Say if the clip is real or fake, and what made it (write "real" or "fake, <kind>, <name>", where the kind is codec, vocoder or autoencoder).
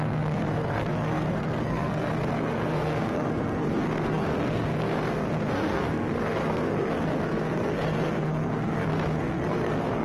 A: fake, codec, SNAC